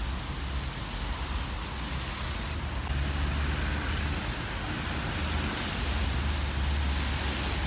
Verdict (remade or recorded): recorded